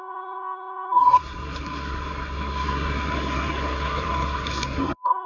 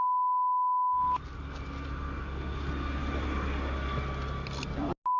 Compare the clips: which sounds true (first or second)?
second